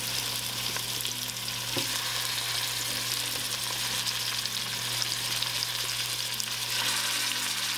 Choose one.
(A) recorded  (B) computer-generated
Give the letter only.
A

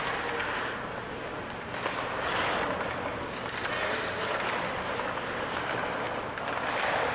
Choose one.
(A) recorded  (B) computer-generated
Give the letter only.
A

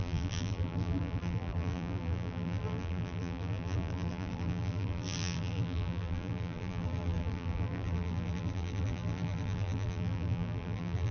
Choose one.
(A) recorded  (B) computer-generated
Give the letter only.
B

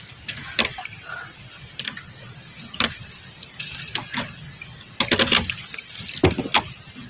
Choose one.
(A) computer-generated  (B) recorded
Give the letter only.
B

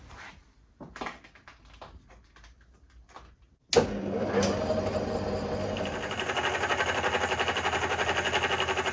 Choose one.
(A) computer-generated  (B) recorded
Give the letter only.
B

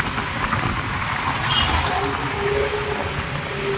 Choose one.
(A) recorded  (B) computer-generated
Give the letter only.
A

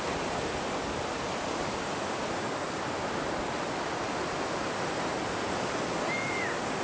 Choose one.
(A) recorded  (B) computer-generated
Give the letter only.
B